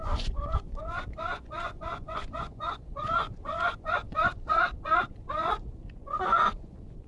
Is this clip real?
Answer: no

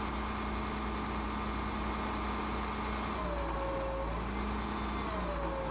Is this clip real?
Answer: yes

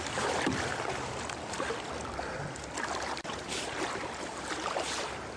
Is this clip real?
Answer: yes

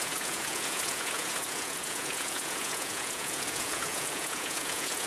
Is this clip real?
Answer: no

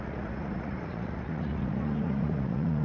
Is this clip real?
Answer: no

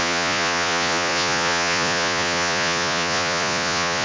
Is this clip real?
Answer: no